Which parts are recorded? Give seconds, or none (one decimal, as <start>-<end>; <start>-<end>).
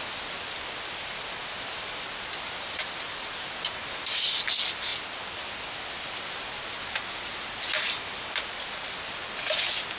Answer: 0.0-10.0